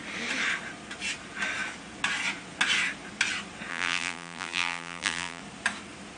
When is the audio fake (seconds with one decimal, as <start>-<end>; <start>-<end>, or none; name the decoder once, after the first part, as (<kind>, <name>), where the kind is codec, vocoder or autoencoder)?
3.7-5.4 (vocoder, BigVGAN v2)